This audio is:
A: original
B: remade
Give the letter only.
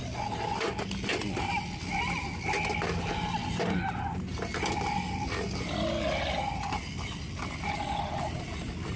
A